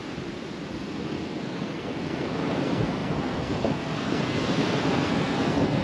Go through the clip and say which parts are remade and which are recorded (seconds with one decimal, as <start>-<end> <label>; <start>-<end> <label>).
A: 0.0-0.7 recorded; 0.7-5.8 remade